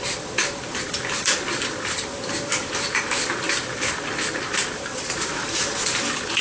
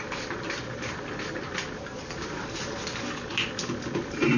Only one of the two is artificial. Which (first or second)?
first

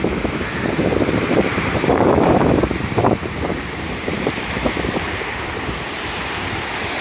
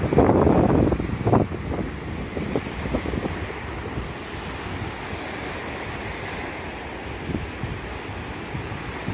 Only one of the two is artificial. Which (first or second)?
first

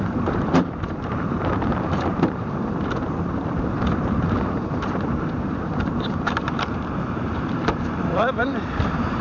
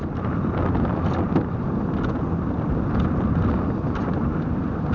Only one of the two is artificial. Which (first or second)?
first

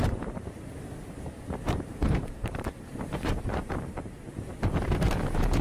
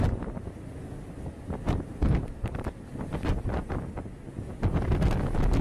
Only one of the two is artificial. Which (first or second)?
first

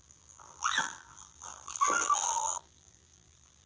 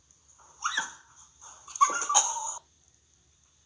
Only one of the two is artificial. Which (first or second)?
first